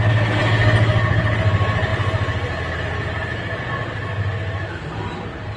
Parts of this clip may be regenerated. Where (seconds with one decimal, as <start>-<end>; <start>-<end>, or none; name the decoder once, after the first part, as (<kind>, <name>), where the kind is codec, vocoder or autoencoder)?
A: none